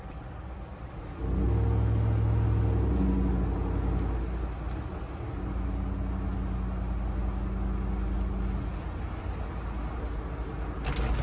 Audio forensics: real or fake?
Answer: real